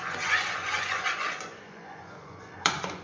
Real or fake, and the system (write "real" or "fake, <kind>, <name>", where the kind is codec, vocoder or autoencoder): fake, vocoder, Vocos